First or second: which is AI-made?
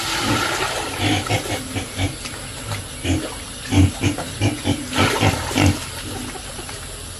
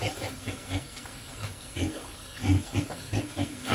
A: second